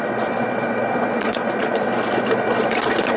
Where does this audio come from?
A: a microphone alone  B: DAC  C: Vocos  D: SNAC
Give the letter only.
C